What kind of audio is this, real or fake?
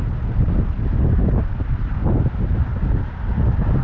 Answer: real